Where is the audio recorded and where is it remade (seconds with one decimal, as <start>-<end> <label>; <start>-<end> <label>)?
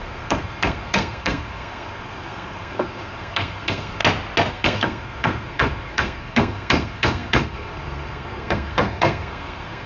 0.0-4.0 remade; 4.0-4.5 recorded; 4.5-9.9 remade